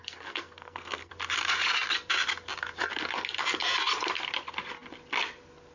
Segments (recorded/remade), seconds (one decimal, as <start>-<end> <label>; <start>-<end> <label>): 0.0-1.1 remade; 1.1-5.7 recorded